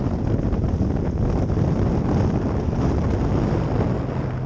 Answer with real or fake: real